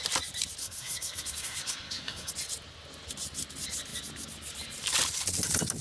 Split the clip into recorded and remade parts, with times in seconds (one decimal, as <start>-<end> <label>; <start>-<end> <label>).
0.0-0.6 recorded; 0.6-2.3 remade; 2.3-5.8 recorded